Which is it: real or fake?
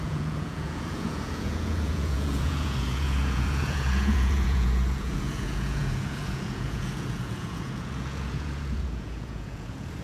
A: fake